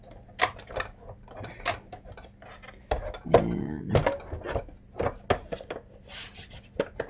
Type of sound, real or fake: real